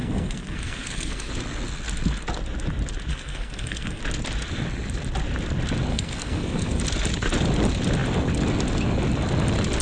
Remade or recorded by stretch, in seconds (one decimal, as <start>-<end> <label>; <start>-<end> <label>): 0.0-1.3 remade; 1.3-3.1 recorded; 3.1-4.0 remade; 4.0-5.9 recorded; 5.9-6.8 remade; 6.8-9.8 recorded